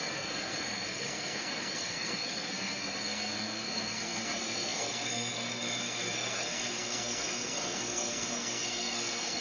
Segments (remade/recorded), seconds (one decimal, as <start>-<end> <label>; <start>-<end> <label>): 0.0-9.4 remade